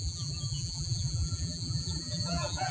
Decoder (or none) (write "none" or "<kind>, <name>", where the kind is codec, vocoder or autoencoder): vocoder, BigVGAN v2